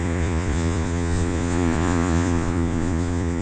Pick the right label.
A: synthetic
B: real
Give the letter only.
A